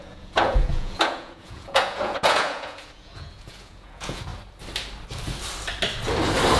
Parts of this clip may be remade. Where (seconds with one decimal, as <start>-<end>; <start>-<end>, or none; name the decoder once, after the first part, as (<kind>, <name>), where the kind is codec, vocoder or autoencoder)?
0.0-4.3 (vocoder, Vocos)